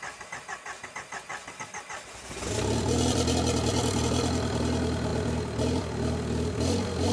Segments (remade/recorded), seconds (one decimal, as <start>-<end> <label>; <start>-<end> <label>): 0.0-7.1 recorded